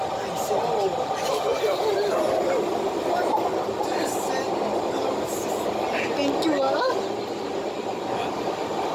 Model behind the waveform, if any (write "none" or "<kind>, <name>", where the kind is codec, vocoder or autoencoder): none